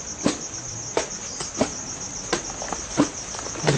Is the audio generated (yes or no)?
no